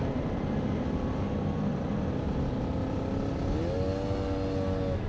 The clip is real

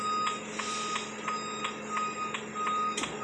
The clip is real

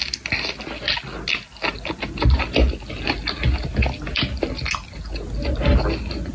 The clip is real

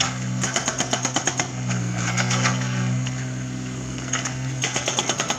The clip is fake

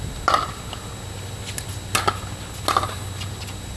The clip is real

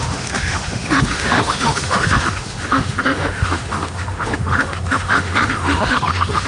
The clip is fake